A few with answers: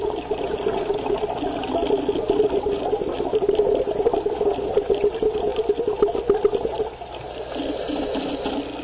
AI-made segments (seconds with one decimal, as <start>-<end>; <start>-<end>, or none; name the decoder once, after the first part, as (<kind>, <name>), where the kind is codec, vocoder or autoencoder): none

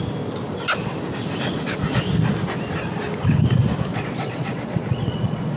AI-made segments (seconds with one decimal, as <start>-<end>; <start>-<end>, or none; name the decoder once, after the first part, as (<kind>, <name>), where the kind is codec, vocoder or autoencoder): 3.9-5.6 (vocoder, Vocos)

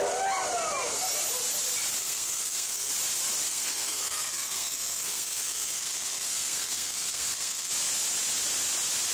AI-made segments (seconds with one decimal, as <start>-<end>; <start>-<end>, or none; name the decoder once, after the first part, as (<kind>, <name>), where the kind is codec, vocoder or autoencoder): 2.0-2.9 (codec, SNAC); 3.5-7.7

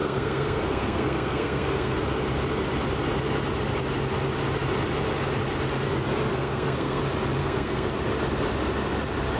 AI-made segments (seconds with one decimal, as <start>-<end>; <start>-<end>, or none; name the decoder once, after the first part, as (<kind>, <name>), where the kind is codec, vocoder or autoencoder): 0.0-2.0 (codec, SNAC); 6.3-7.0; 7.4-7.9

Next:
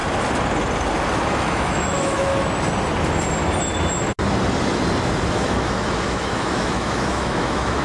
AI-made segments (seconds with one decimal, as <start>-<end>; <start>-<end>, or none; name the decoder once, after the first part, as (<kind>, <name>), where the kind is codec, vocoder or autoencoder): 1.3-2.3 (autoencoder, DAC-VAE); 5.3-7.8

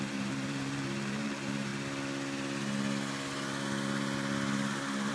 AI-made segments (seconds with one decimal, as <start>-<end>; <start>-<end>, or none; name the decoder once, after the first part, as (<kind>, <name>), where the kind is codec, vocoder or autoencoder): 0.0-1.7 (vocoder, BigVGAN v2)

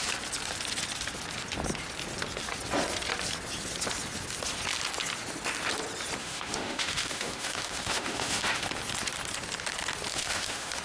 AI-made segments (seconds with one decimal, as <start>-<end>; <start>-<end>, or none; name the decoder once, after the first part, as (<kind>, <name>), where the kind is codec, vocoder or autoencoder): 6.2-8.7 (autoencoder, DAC-VAE); 10.1-10.8